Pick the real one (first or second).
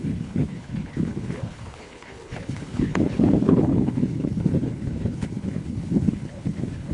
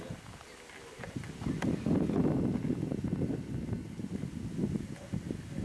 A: second